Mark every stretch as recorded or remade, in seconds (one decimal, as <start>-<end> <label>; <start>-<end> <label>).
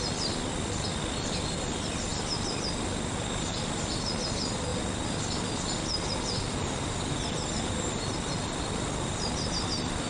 0.0-10.1 recorded